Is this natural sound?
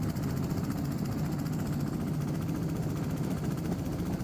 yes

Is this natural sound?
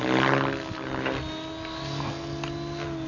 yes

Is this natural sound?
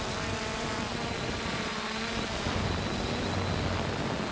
yes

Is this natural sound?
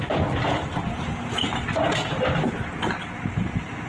yes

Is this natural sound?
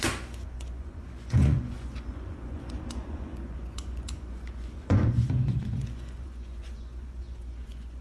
no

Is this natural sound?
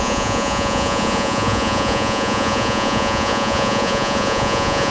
no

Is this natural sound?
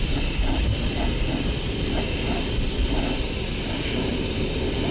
yes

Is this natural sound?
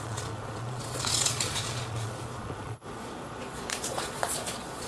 no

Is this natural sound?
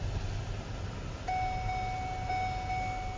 yes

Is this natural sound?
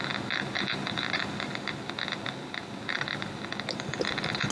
yes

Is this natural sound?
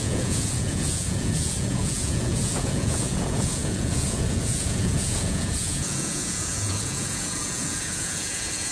no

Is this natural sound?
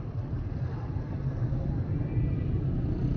yes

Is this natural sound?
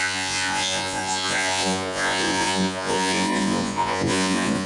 no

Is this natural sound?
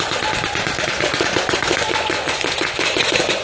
no